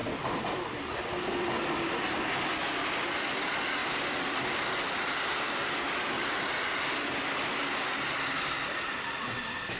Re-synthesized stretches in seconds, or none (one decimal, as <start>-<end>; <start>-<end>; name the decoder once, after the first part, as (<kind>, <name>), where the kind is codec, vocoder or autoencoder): 0.0-1.9 (vocoder, BigVGAN v2); 3.8-6.2